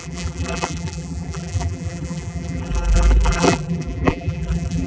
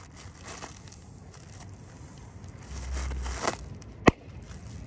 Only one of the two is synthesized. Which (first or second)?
first